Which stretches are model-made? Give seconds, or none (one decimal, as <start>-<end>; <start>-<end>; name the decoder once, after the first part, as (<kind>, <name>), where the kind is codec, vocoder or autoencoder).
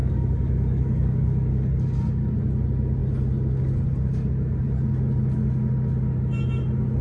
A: 0.0-2.0 (codec, DAC)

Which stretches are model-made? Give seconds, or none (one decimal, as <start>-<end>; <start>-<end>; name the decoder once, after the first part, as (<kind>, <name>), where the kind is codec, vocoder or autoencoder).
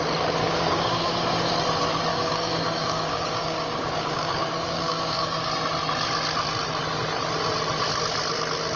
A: 0.4-1.5 (codec, DAC); 2.1-5.5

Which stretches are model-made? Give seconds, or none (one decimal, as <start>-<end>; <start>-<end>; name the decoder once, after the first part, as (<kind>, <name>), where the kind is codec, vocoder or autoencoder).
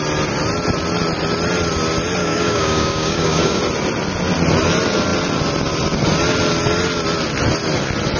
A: 2.2-3.6 (codec, DAC)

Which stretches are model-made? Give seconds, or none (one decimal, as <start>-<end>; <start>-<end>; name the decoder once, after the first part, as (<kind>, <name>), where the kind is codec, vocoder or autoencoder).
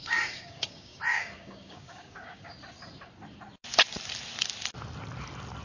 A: 0.0-2.5 (codec, DAC)